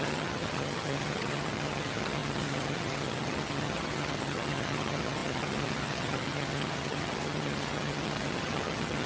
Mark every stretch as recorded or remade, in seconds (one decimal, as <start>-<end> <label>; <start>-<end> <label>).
0.0-9.1 remade